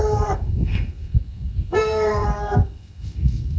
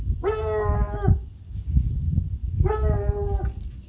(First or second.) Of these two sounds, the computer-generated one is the first